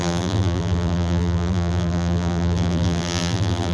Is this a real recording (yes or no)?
no